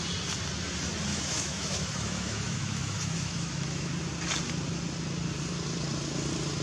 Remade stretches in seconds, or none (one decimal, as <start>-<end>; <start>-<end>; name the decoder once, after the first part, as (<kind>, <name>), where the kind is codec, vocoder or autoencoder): 1.1-3.9 (autoencoder, DAC-VAE)